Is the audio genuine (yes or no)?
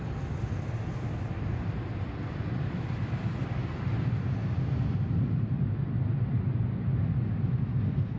yes